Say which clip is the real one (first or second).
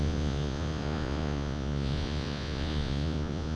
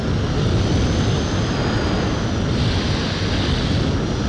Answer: second